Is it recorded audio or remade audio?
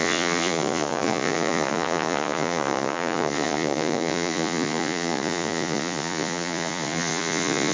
remade